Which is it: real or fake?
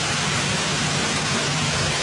real